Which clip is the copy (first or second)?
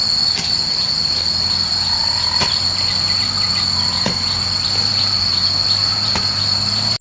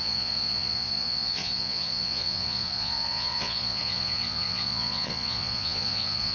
second